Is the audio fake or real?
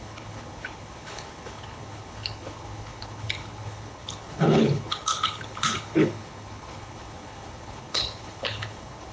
fake